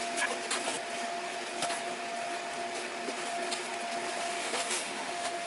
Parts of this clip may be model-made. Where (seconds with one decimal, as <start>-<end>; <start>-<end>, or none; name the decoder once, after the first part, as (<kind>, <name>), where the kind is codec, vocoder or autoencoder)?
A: 4.3-5.5 (autoencoder, DAC-VAE)